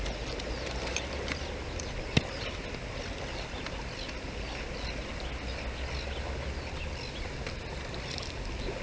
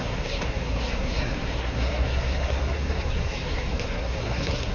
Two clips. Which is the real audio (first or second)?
first